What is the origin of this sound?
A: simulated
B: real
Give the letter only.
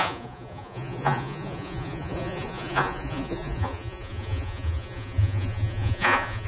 A